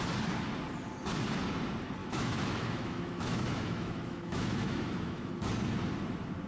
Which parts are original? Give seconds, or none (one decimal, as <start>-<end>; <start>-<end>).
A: 0.0-2.0; 5.3-6.5